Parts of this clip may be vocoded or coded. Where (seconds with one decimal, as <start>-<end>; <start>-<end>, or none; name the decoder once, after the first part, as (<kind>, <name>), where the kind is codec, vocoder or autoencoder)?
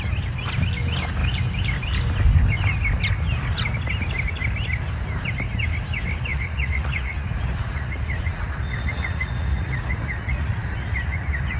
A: 6.3-11.6 (vocoder, Vocos)